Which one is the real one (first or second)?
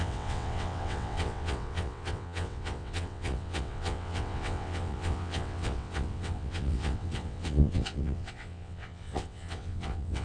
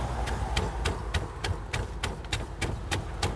second